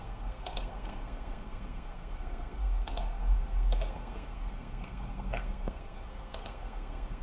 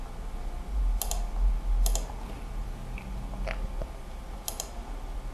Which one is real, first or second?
second